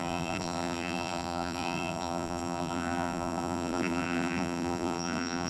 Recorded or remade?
remade